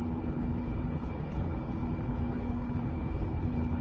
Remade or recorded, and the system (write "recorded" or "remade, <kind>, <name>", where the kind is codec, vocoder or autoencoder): remade, codec, HILCodec